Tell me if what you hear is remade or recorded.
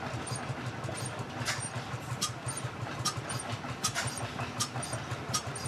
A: remade